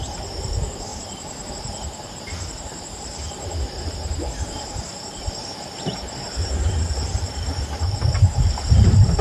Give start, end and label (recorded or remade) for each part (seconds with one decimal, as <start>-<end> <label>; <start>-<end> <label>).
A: 0.0-9.2 remade